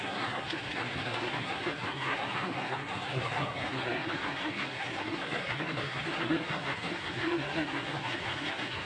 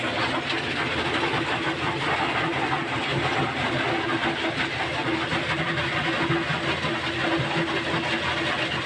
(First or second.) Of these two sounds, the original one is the second